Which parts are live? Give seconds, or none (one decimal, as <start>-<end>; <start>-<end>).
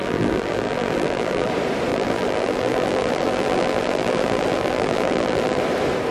1.5-1.9; 5.6-6.1